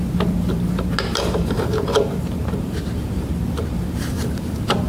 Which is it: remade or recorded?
remade